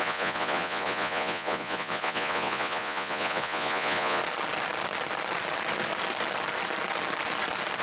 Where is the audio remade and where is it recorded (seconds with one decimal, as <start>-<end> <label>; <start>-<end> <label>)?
0.0-4.2 remade; 4.2-7.8 recorded